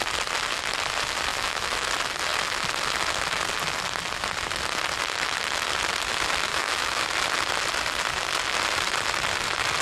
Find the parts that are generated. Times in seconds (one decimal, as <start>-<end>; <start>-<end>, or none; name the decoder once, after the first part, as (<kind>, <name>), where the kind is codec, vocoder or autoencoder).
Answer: 1.3-1.9 (autoencoder, DAC-VAE); 6.5-7.1